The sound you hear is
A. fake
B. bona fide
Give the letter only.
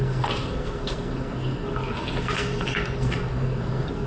A